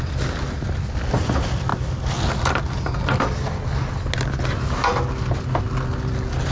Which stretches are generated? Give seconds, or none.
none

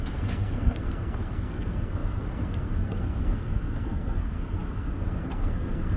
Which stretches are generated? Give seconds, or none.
0.0-6.0 (codec, SNAC)

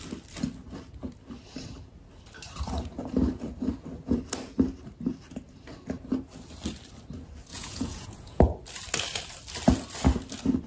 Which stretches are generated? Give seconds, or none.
7.5-8.4 (vocoder, Vocos)

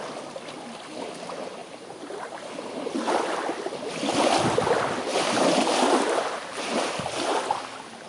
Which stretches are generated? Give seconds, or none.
1.6-2.5 (vocoder, BigVGAN v2); 5.1-7.0

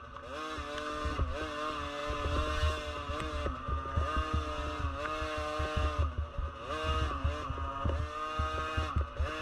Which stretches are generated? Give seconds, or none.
none

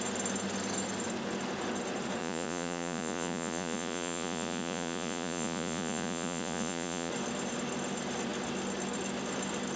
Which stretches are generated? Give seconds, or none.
2.2-7.1 (vocoder, Vocos)

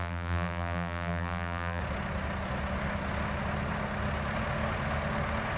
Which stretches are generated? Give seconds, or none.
0.0-1.8 (vocoder, BigVGAN v2)

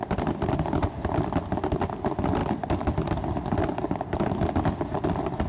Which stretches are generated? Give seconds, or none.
none